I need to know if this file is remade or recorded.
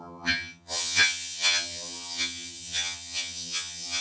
remade